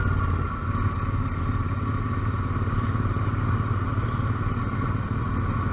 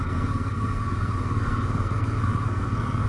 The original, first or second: first